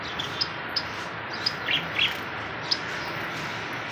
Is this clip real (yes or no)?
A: yes